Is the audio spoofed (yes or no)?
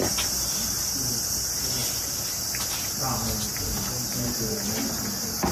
no